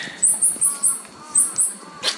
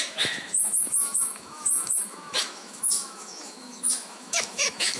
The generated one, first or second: second